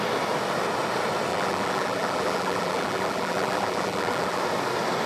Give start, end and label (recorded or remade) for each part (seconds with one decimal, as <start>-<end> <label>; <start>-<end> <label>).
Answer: 0.0-1.3 recorded; 1.3-4.4 remade; 4.4-5.1 recorded